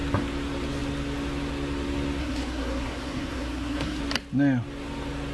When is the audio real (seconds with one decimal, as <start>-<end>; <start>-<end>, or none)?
0.0-2.2; 4.0-5.3

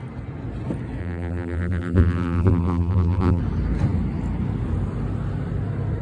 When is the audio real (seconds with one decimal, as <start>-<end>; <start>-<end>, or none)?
0.0-1.0; 3.4-6.0

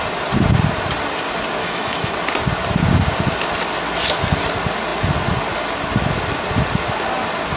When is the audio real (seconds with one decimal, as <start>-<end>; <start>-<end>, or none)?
0.0-1.6; 2.1-7.6